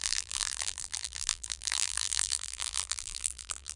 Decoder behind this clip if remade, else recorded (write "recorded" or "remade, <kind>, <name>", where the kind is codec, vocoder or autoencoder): remade, vocoder, BigVGAN v2